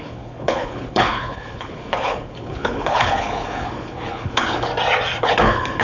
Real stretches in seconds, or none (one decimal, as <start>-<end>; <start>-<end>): 4.7-5.2